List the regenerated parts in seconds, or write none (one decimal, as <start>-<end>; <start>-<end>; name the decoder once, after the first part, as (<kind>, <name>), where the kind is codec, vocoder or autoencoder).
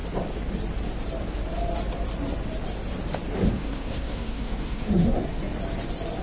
3.4-5.4 (codec, SNAC)